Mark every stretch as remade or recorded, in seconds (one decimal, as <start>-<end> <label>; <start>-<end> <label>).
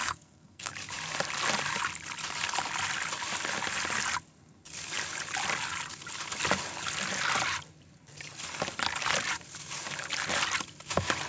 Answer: 0.0-0.7 remade; 0.7-11.3 recorded